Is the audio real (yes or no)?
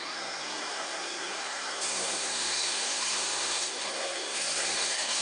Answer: no